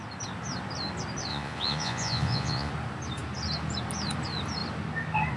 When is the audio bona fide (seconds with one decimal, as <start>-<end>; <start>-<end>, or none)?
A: 0.0-1.3; 2.7-5.4